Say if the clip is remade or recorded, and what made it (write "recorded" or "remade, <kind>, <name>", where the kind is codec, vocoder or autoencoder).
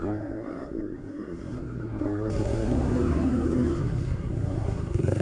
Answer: remade, codec, SNAC